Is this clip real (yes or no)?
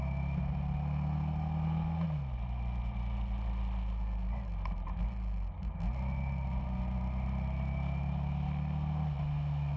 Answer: yes